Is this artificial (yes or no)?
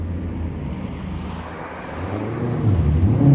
no